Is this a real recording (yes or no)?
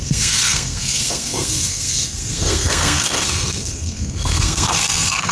no